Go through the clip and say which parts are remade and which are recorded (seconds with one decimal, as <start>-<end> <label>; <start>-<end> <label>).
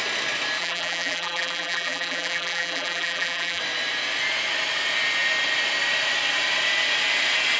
0.0-0.6 recorded; 0.6-3.6 remade; 3.6-7.6 recorded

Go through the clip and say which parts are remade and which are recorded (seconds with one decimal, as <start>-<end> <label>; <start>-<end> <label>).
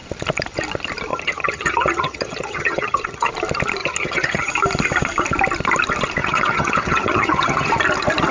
0.0-1.1 recorded; 1.1-3.3 remade; 3.3-3.8 recorded; 3.8-4.5 remade; 4.5-6.2 recorded; 6.2-7.7 remade; 7.7-8.3 recorded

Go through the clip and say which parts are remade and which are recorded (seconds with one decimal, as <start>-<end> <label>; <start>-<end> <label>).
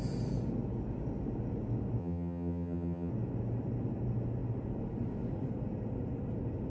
0.0-2.0 recorded; 2.0-3.1 remade; 3.1-6.7 recorded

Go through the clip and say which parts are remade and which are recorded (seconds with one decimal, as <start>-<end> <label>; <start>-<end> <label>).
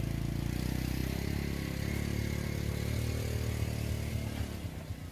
0.0-5.1 recorded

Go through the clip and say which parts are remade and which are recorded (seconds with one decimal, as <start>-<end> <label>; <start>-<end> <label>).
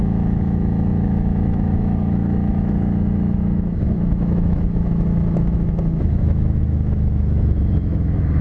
0.0-8.4 remade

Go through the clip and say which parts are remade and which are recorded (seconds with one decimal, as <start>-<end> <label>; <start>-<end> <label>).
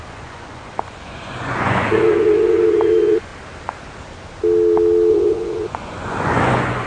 0.0-3.3 remade; 3.3-5.1 recorded; 5.1-6.9 remade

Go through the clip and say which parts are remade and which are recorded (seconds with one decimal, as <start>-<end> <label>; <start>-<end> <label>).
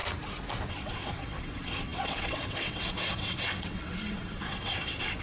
0.0-0.7 recorded; 0.7-5.2 remade